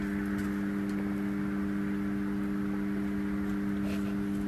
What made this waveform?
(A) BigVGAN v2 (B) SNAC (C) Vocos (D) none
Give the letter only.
D